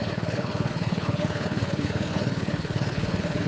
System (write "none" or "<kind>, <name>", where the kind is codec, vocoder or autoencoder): codec, HILCodec